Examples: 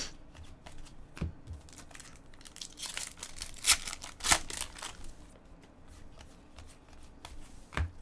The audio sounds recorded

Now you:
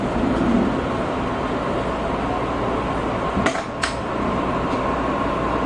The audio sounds recorded